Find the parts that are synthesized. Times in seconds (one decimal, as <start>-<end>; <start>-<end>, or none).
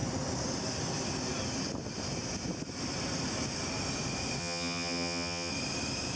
4.4-5.5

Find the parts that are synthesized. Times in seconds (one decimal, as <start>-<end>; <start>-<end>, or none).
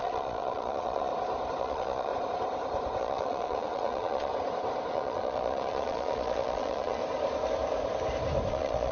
0.0-1.1; 1.6-2.1; 3.0-4.3; 4.9-7.0; 8.5-8.9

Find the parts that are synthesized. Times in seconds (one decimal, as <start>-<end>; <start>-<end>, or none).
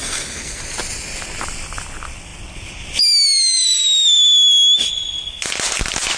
0.0-0.6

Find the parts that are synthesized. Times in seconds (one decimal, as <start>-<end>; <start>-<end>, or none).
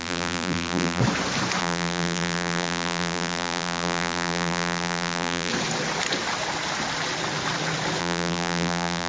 0.0-1.0; 1.6-5.5; 8.0-9.1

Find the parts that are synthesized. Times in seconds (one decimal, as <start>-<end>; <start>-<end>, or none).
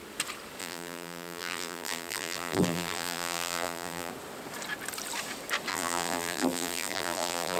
0.6-4.1; 5.7-7.6